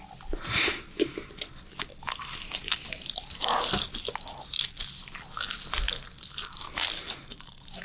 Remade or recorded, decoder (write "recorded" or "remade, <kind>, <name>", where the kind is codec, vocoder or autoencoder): recorded